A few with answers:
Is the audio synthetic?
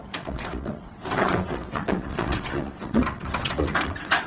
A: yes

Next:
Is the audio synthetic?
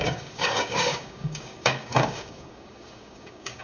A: yes